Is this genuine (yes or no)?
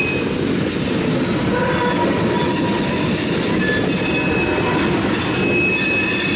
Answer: yes